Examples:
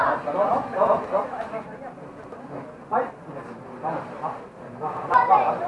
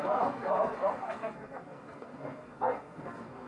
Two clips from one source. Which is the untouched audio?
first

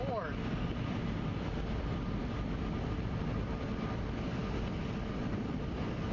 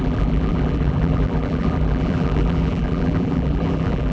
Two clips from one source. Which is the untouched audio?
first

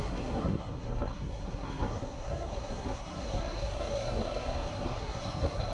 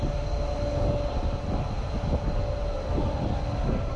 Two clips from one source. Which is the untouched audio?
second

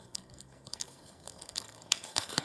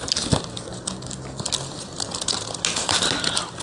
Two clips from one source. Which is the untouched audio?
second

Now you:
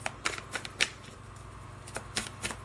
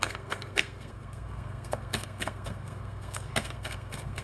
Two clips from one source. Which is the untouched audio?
first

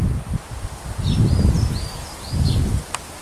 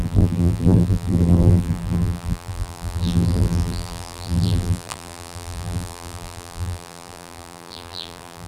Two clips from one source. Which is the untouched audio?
first